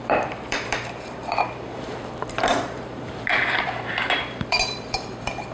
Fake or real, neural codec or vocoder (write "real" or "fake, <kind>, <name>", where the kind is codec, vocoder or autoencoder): fake, vocoder, BigVGAN v2